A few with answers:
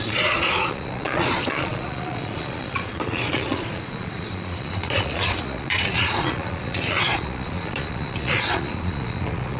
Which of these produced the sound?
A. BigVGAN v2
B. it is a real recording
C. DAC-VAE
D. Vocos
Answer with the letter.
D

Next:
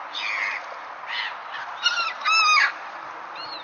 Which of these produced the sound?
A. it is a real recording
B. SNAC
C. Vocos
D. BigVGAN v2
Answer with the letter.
A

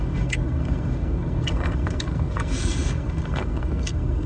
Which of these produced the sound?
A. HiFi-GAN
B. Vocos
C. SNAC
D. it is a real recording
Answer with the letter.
C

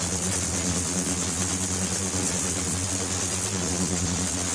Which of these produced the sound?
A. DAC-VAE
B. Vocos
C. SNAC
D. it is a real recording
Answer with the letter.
B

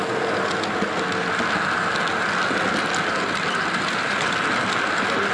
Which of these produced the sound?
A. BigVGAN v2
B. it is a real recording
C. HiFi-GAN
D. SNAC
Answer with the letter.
B